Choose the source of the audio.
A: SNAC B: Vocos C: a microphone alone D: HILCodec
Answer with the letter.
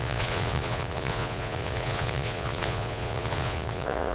B